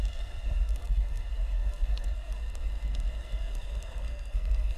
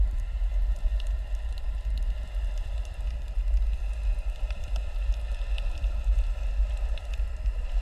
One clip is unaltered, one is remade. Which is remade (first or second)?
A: first